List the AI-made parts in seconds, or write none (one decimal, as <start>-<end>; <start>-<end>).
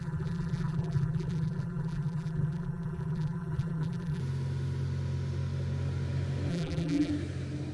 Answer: 0.0-4.2; 6.5-7.1